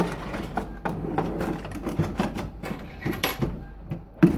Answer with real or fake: fake